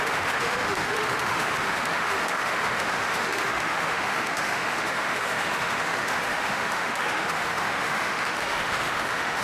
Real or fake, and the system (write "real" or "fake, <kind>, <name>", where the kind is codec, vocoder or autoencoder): fake, autoencoder, DAC-VAE